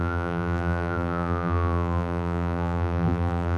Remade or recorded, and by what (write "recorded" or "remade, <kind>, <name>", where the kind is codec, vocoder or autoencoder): remade, vocoder, BigVGAN v2